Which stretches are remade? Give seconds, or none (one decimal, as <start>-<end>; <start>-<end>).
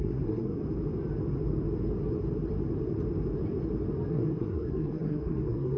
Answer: 0.0-0.6; 4.1-5.8